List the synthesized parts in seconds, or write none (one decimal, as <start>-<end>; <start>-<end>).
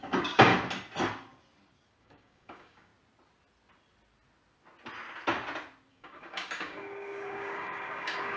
0.0-0.5; 2.0-2.9; 5.9-8.4